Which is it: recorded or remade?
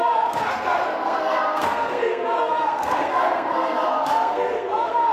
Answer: remade